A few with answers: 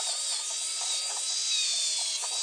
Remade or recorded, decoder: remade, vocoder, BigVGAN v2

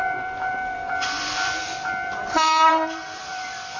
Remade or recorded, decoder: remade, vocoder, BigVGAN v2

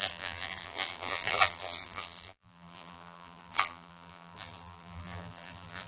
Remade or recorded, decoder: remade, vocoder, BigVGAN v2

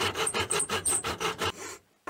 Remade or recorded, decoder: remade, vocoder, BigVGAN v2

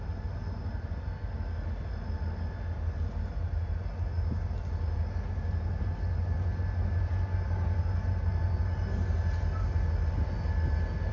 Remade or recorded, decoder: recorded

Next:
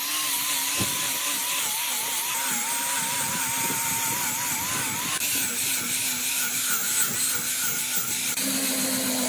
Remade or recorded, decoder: recorded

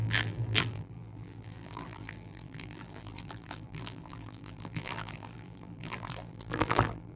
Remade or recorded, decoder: remade, vocoder, BigVGAN v2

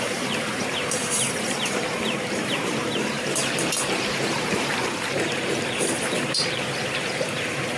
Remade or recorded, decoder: remade, vocoder, BigVGAN v2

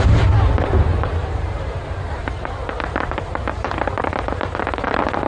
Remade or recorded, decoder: remade, vocoder, BigVGAN v2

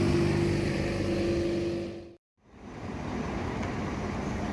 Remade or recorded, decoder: recorded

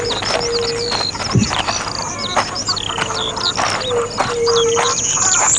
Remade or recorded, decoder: recorded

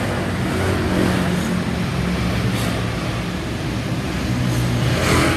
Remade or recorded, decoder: recorded